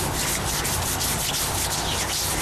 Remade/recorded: recorded